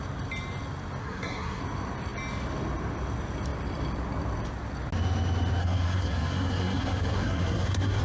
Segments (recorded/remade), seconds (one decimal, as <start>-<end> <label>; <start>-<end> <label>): 0.0-1.0 recorded; 1.0-1.6 remade; 1.6-5.6 recorded; 5.6-8.0 remade